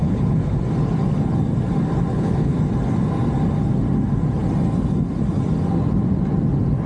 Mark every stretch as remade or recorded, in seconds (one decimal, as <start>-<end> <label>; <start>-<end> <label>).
0.0-0.6 remade; 0.6-2.1 recorded; 2.1-2.6 remade; 2.6-6.9 recorded